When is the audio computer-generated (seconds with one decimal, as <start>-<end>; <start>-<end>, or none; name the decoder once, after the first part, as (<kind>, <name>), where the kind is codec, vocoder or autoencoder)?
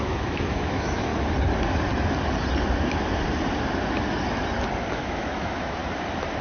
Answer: 0.0-1.1 (autoencoder, DAC-VAE); 4.9-5.8